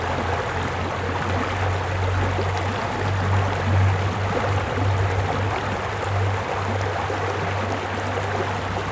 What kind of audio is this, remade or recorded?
recorded